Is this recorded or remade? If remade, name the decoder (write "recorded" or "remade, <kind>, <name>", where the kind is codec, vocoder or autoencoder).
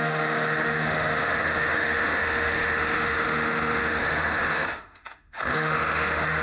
remade, autoencoder, DAC-VAE